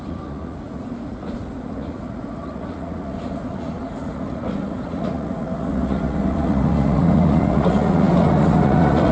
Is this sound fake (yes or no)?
yes